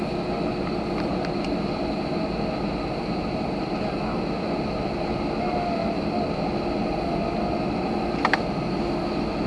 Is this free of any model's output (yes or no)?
yes